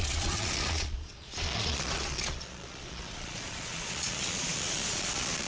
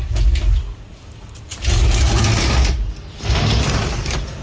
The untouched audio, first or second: second